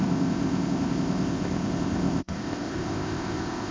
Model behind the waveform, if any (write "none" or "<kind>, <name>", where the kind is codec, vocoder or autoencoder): codec, ZipCodec